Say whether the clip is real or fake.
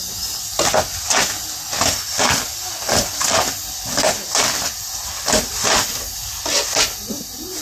real